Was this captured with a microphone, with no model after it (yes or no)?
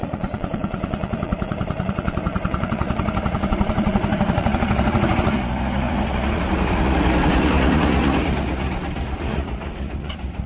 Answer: no